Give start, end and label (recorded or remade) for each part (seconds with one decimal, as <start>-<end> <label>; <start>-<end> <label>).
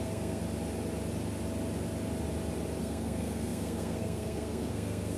0.0-0.4 remade; 0.4-2.8 recorded; 2.8-5.2 remade